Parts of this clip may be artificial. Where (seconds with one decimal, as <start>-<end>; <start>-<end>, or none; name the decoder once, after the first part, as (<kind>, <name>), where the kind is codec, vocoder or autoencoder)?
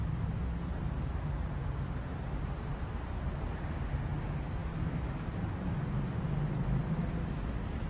0.8-3.7 (vocoder, BigVGAN v2)